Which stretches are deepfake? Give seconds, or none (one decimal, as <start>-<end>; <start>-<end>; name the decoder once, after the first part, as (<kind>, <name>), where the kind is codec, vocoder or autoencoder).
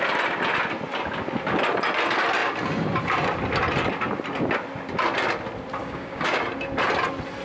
5.8-6.4 (codec, DAC)